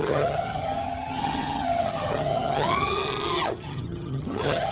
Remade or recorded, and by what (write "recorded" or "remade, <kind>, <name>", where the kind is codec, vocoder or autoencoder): remade, vocoder, HiFi-GAN